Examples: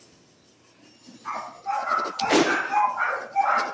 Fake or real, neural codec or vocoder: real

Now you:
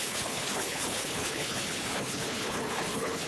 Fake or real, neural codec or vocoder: fake, codec, HILCodec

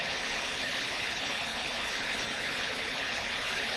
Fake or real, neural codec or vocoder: fake, codec, HILCodec